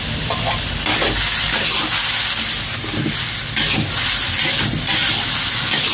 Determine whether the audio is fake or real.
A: real